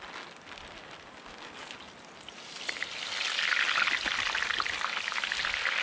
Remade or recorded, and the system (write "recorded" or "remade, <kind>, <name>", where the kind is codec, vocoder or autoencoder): recorded